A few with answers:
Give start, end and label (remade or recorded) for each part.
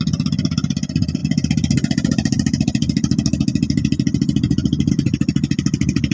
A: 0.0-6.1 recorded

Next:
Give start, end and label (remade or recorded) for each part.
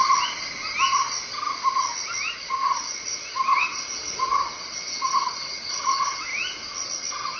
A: 0.0-2.4 recorded; 2.4-6.3 remade; 6.3-7.0 recorded; 7.0-7.4 remade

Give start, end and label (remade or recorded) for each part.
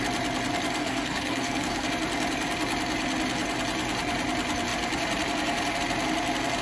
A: 0.0-0.8 recorded; 0.8-1.9 remade; 1.9-6.6 recorded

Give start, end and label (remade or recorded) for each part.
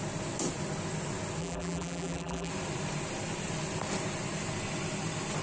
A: 0.0-1.4 recorded; 1.4-2.5 remade; 2.5-5.4 recorded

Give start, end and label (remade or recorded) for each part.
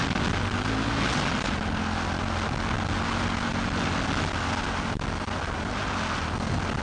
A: 0.0-6.8 recorded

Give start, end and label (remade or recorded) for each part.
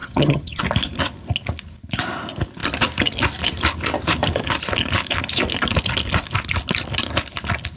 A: 0.0-0.6 remade; 0.6-7.8 recorded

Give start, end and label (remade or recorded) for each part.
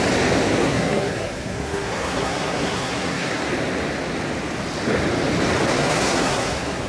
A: 0.0-0.6 recorded; 0.6-3.5 remade; 3.5-5.7 recorded; 5.7-6.9 remade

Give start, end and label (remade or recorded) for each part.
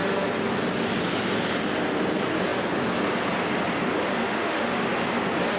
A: 0.0-4.2 recorded; 4.2-4.7 remade; 4.7-5.6 recorded